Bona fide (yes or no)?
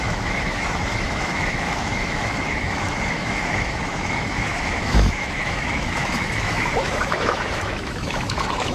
no